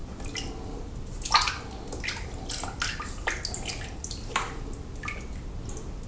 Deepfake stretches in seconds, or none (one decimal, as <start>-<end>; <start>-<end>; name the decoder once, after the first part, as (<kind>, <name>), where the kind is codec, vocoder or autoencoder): none